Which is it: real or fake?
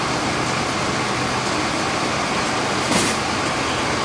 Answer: real